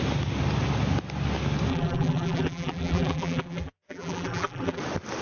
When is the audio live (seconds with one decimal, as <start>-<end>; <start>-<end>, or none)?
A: 0.0-1.7; 4.8-5.2